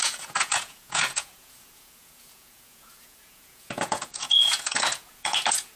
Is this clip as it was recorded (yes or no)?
no